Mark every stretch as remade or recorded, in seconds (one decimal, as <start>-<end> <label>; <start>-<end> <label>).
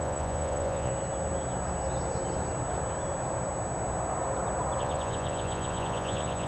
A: 0.0-0.9 remade; 0.9-4.8 recorded; 4.8-6.5 remade